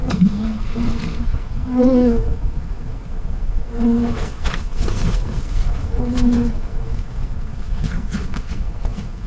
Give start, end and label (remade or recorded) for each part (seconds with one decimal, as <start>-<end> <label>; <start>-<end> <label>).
0.0-9.3 remade